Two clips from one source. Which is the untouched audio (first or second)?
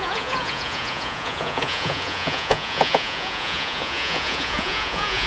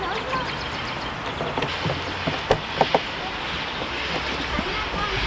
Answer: second